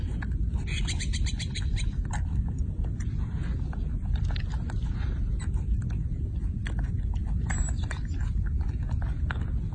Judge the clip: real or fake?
real